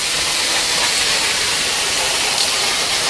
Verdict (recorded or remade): remade